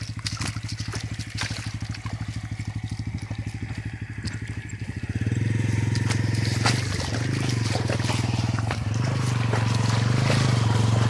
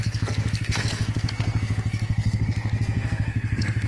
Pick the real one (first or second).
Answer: first